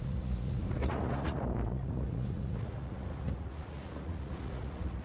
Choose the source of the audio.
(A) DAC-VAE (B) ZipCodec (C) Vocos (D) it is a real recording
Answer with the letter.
C